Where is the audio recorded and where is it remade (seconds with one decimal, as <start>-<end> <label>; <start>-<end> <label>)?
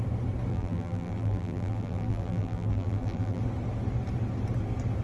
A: 0.0-0.5 recorded; 0.5-3.4 remade; 3.4-5.0 recorded